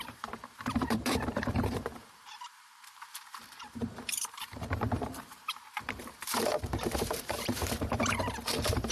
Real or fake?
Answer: fake